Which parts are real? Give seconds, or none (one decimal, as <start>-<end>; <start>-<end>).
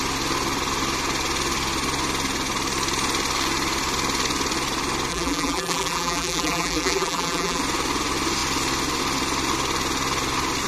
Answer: 0.0-5.1; 7.6-10.7